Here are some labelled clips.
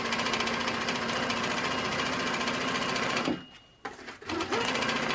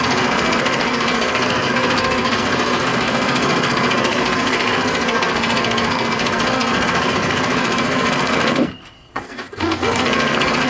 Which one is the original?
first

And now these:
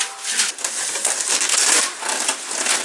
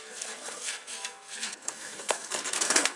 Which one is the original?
first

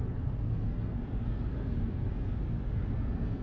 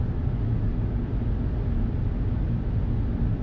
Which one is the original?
second